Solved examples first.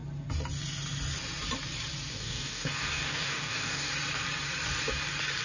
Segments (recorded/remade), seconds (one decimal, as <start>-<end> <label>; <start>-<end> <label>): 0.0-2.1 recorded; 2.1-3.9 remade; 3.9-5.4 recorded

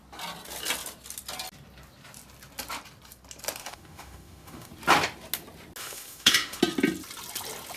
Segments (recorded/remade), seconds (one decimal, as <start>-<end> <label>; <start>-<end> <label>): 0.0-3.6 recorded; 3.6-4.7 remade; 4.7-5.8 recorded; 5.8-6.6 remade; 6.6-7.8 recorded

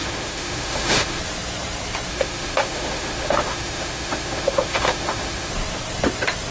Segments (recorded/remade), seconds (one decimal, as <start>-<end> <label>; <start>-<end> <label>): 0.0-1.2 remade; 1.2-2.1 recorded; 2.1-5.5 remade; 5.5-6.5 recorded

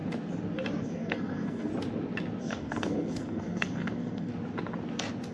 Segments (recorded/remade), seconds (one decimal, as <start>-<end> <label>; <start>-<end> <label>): 0.0-0.8 recorded; 0.8-1.7 remade; 1.7-2.4 recorded; 2.4-4.3 remade; 4.3-5.3 recorded

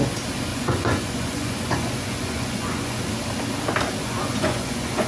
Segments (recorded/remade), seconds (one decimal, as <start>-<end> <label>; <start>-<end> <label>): 0.0-0.5 recorded; 0.5-3.0 remade; 3.0-4.0 recorded; 4.0-5.1 remade

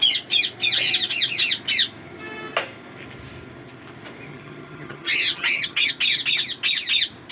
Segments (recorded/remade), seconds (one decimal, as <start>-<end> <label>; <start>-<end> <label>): 0.0-4.3 recorded; 4.3-5.9 remade; 5.9-7.3 recorded

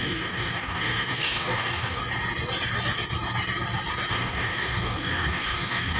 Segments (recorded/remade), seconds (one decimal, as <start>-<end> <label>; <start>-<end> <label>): 0.0-2.0 remade; 2.0-4.1 recorded; 4.1-6.0 remade

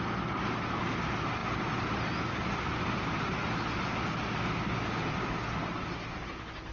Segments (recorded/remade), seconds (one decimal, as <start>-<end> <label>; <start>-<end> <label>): 0.0-6.7 recorded